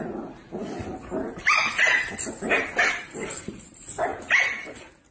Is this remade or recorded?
recorded